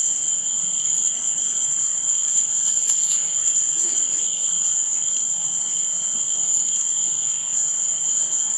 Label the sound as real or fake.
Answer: fake